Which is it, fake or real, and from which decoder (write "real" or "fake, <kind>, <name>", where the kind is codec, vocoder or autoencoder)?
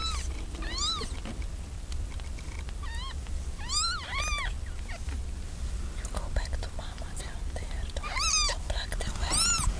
real